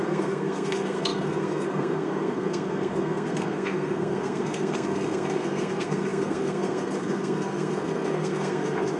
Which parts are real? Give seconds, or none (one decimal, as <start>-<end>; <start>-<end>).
none